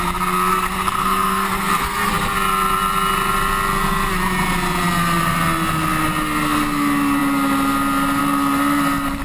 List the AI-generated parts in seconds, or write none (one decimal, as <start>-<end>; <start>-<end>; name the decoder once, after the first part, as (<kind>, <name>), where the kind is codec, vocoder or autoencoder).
0.5-2.1 (codec, SNAC)